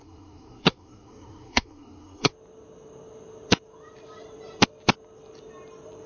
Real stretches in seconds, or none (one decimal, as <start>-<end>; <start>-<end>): 2.3-6.1